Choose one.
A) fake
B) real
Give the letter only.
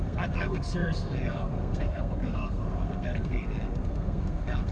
A